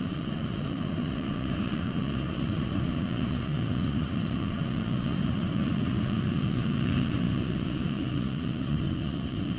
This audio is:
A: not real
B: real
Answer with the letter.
A